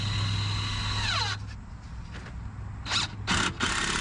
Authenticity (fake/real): real